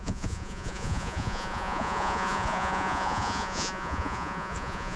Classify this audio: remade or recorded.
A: remade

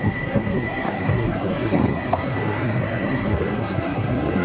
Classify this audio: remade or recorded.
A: remade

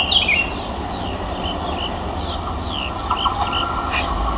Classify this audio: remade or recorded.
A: recorded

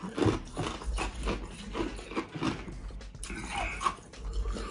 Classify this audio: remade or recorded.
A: recorded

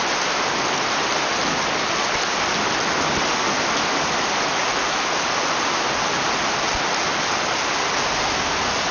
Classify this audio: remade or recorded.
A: recorded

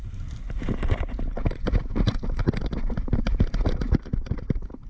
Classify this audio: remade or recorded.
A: recorded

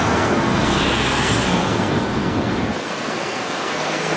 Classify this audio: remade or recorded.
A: remade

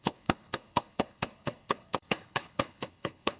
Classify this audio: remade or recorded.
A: remade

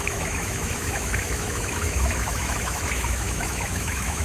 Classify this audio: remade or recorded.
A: remade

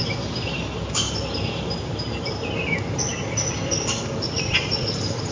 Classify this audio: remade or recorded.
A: recorded